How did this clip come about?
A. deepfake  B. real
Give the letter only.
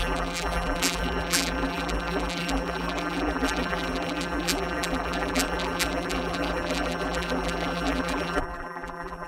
A